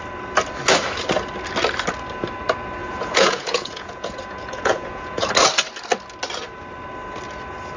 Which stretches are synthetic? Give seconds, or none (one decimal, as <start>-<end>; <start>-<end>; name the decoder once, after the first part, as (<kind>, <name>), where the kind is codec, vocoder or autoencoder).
2.8-5.3 (vocoder, Vocos)